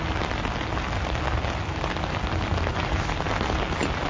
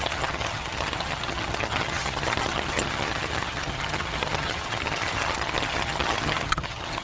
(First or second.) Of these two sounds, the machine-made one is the second